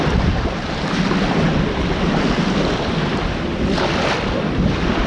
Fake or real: real